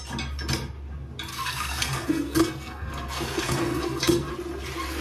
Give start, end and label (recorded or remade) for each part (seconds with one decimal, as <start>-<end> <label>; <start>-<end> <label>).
0.0-1.3 recorded; 1.3-4.3 remade; 4.3-5.0 recorded